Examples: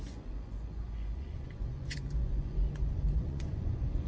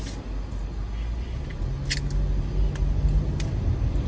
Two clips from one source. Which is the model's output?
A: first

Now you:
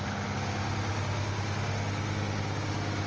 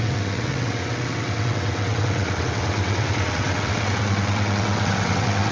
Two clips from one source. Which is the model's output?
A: second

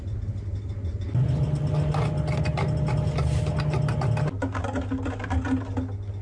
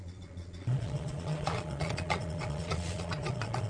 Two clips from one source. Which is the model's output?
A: second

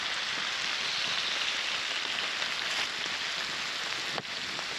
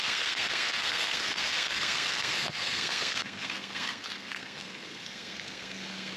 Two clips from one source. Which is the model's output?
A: second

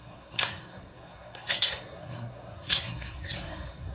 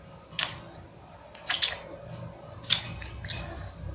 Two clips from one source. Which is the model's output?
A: first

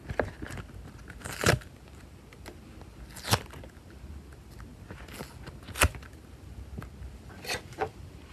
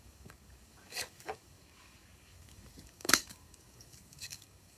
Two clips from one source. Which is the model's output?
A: second